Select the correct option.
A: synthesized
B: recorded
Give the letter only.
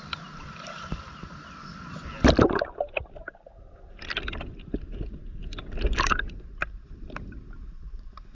B